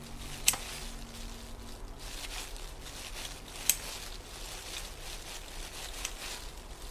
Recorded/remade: recorded